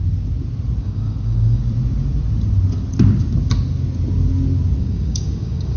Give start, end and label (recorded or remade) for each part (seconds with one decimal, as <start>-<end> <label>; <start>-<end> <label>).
0.0-0.8 recorded; 0.8-1.6 remade; 1.6-4.8 recorded; 4.8-5.8 remade